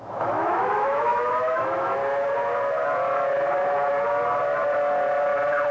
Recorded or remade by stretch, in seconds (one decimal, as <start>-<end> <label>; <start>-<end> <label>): 0.0-2.0 remade; 2.0-5.7 recorded